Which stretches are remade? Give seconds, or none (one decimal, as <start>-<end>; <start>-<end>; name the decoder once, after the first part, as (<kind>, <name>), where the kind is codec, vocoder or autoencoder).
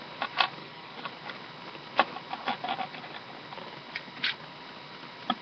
0.6-1.1 (codec, DAC)